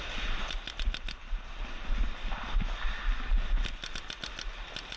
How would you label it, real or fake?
real